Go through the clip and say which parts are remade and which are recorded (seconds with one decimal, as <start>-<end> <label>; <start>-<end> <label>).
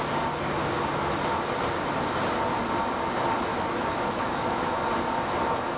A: 0.0-3.5 recorded; 3.5-4.7 remade; 4.7-5.8 recorded